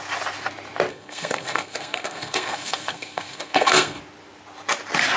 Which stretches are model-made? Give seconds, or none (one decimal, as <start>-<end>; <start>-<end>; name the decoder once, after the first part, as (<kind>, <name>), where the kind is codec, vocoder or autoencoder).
0.9-4.0 (codec, SNAC)